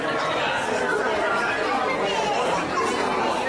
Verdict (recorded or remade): recorded